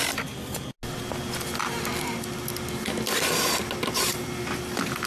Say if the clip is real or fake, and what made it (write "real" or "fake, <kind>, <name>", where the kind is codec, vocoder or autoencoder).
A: real